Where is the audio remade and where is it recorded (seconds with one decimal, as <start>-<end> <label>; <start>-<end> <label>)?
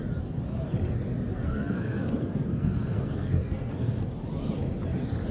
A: 0.0-1.3 recorded; 1.3-4.1 remade; 4.1-5.3 recorded